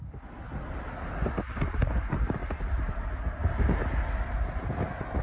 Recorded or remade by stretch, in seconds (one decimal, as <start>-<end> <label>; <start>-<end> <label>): 0.0-5.2 recorded